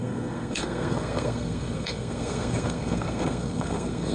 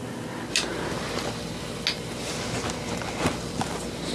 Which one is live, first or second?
second